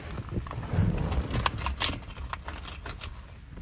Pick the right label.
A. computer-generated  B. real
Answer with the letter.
B